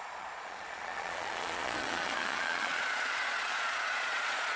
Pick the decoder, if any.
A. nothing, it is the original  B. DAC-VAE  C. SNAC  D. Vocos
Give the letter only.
D